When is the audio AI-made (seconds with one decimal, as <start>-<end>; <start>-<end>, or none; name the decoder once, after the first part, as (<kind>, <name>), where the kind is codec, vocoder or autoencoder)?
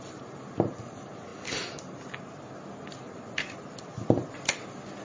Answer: none